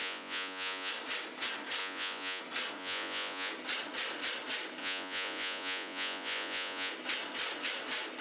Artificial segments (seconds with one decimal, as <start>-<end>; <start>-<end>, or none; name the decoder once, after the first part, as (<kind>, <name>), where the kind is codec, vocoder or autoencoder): 0.0-0.9 (vocoder, Vocos); 1.8-2.4; 2.8-3.5; 4.8-6.9